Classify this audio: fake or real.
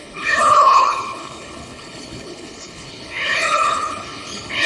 fake